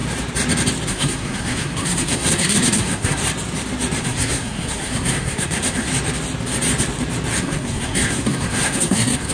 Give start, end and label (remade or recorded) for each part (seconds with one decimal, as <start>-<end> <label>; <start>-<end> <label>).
0.0-0.9 recorded; 0.9-3.2 remade; 3.2-4.0 recorded; 4.0-5.9 remade; 5.9-7.4 recorded; 7.4-9.3 remade